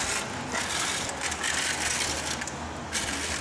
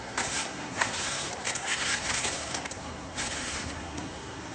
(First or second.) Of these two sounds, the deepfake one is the second